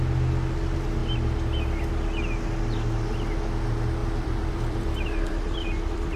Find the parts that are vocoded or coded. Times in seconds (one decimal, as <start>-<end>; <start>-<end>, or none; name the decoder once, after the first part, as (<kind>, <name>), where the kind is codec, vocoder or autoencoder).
4.0-6.2 (vocoder, BigVGAN v2)